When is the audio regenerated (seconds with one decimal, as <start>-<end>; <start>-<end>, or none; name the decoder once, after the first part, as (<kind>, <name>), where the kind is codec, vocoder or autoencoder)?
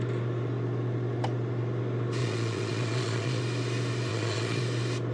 2.2-3.4 (vocoder, Vocos); 4.1-4.6